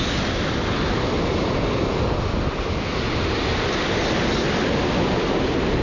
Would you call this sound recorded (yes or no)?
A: yes